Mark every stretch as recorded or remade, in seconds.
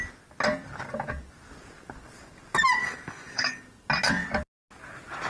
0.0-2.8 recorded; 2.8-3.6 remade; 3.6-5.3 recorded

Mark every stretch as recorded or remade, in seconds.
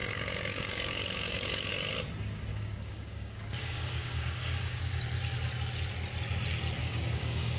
0.0-1.7 remade; 1.7-2.5 recorded; 2.5-5.0 remade; 5.0-6.8 recorded; 6.8-7.6 remade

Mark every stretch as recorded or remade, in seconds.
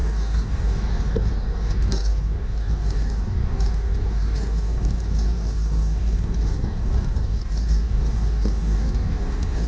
0.0-9.7 remade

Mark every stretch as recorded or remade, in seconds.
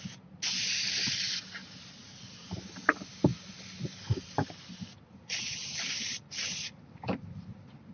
0.0-7.9 recorded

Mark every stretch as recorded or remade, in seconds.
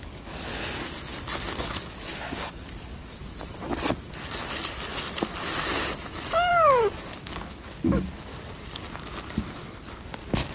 0.0-0.5 remade; 0.5-1.6 recorded; 1.6-3.2 remade; 3.2-6.5 recorded; 6.5-8.3 remade; 8.3-10.0 recorded; 10.0-10.5 remade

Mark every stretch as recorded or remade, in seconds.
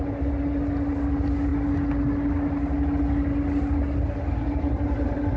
0.0-5.4 recorded